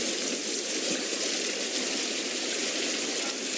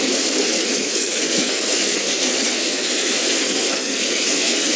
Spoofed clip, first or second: second